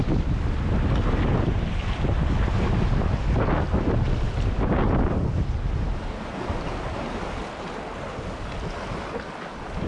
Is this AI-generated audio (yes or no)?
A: no